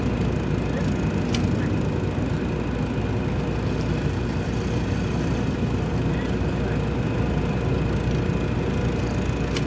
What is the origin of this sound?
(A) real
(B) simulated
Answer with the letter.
A